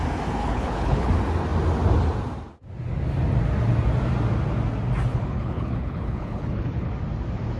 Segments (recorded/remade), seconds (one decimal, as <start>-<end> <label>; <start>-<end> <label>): 0.0-0.4 recorded; 0.4-1.1 remade; 1.1-5.1 recorded; 5.1-6.9 remade; 6.9-7.6 recorded